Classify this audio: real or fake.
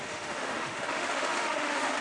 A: fake